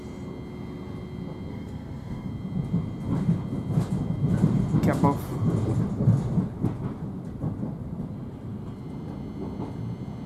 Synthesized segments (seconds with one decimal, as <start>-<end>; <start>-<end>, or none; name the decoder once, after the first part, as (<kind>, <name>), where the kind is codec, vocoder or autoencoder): 1.5-2.3 (codec, SNAC)